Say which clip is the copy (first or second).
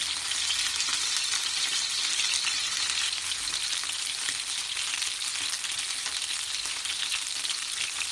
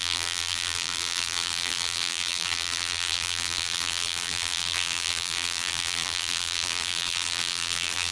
second